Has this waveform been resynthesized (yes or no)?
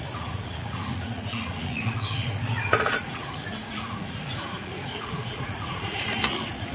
yes